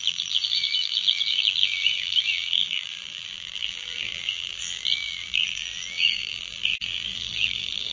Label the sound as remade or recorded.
remade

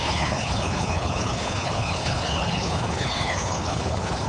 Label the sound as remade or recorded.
remade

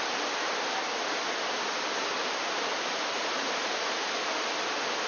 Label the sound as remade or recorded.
recorded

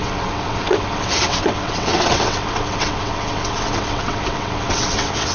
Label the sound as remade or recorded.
remade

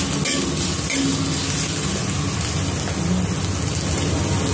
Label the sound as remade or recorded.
recorded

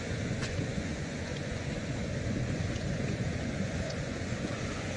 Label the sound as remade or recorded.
remade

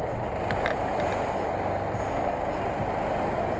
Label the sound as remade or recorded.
recorded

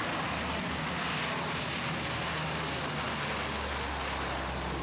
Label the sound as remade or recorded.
recorded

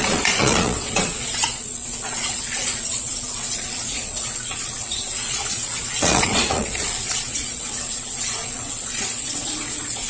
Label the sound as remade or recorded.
remade